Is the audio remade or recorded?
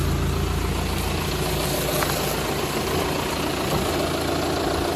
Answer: recorded